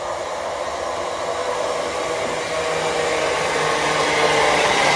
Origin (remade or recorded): recorded